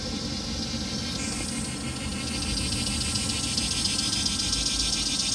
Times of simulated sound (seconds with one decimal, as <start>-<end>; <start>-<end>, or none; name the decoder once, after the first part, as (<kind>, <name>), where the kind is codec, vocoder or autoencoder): none